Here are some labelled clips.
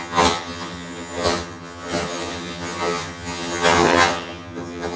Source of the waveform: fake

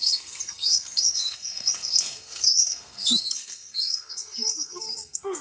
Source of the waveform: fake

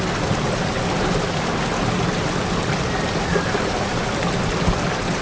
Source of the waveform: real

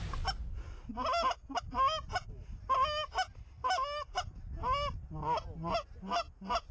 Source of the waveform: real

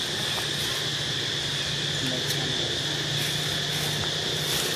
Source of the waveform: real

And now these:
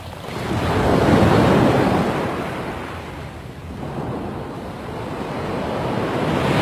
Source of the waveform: fake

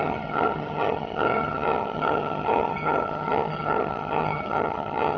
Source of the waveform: fake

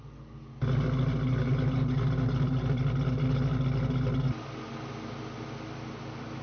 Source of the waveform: real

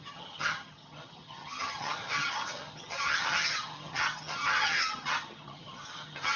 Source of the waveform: fake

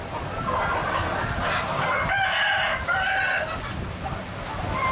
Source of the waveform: real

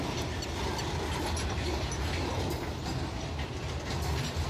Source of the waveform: real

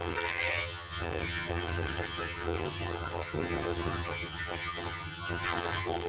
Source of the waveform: fake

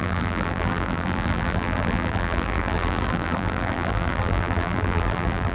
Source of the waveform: fake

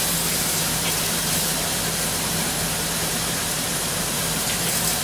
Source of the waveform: fake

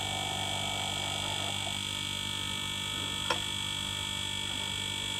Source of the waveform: real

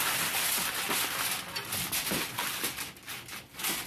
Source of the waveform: real